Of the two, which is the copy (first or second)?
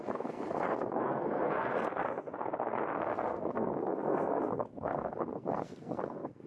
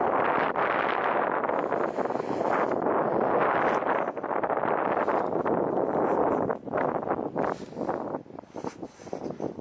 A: first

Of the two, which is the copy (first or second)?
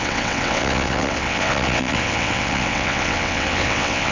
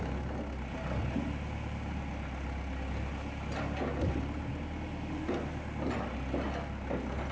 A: first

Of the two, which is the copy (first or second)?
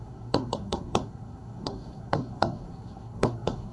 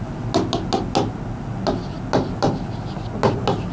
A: first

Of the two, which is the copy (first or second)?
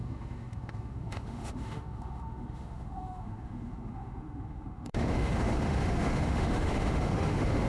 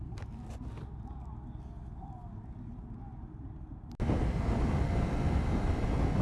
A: first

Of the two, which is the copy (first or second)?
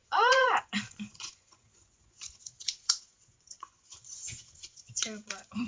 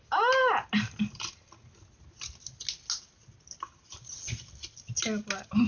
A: first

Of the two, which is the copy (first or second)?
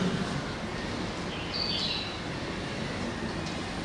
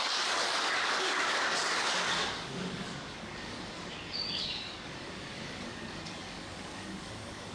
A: second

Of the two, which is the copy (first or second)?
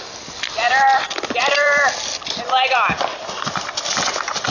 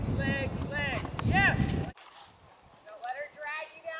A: first